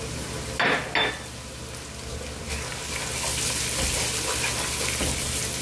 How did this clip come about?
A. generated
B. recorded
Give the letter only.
B